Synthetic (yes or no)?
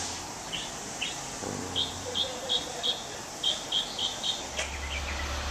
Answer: no